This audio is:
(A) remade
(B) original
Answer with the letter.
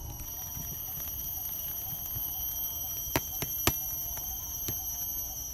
B